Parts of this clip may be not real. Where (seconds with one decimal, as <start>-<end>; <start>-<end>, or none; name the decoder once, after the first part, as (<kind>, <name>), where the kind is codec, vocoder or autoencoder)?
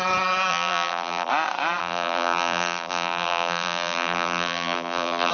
0.5-1.3 (vocoder, BigVGAN v2); 1.8-5.3